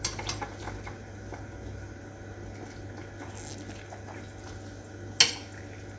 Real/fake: real